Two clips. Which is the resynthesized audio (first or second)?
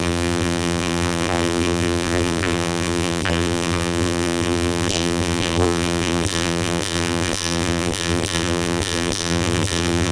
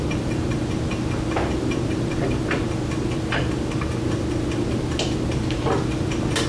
first